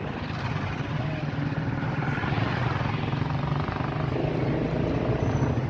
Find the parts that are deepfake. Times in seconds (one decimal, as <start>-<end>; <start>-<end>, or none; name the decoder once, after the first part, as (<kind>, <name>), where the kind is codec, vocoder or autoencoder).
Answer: 2.2-2.9 (vocoder, Vocos)

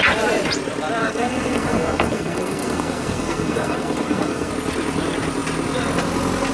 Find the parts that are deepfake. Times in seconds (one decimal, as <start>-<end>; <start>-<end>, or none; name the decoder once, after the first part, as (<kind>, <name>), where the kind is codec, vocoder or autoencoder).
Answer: 1.0-4.5 (codec, SNAC)

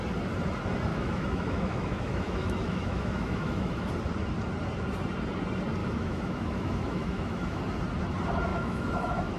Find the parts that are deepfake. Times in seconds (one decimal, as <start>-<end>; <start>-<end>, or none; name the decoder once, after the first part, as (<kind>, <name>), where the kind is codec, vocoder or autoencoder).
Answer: 0.9-3.9 (autoencoder, DAC-VAE); 5.8-7.6; 8.5-9.4

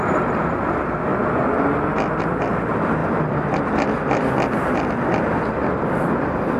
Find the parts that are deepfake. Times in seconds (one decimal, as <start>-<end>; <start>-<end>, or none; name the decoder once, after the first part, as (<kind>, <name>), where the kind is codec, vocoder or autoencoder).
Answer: 3.0-4.2 (vocoder, BigVGAN v2)

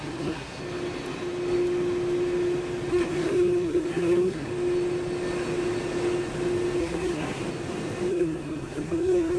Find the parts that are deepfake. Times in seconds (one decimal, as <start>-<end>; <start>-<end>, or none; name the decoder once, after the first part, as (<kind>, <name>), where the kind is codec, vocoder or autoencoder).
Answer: 0.0-0.6 (codec, SNAC); 2.9-4.5; 6.8-7.4; 8.1-9.4

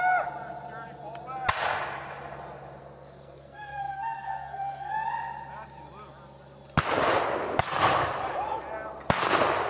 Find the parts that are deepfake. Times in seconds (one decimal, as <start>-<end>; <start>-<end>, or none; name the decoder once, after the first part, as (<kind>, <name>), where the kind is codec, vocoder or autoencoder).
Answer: 2.8-4.9 (codec, SNAC)

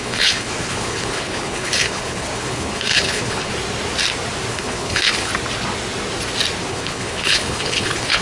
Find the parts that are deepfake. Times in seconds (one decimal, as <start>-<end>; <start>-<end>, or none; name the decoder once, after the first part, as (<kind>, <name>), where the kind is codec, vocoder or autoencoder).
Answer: 0.0-3.5 (codec, HILCodec); 4.5-5.3; 6.7-8.2